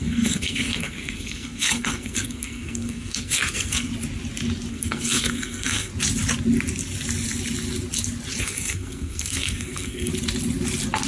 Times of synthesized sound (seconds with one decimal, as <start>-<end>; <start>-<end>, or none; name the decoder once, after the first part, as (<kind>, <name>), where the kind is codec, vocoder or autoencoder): 0.0-3.9 (codec, SNAC); 4.7-5.9; 8.4-10.1